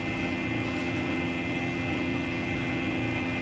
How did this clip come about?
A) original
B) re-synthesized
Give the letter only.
B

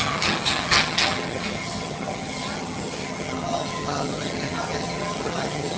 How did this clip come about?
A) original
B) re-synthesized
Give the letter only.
B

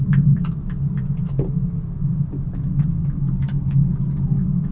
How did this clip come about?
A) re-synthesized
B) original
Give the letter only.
B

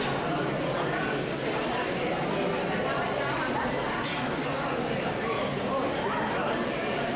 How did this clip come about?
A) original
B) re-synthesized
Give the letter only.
A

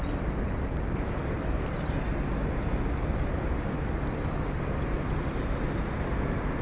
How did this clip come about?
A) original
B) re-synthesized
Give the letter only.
A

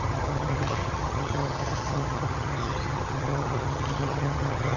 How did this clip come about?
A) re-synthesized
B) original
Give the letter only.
A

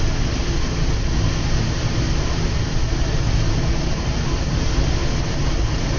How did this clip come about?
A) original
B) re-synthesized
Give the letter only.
A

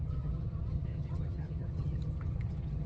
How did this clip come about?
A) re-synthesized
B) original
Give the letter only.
A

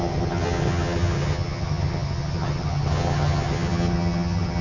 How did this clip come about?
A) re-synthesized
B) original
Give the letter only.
A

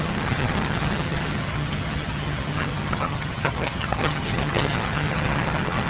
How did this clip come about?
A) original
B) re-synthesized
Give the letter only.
B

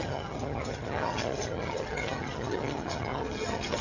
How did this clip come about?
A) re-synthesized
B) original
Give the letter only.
A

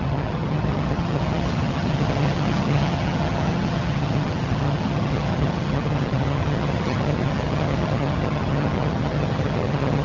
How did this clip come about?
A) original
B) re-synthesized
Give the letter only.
B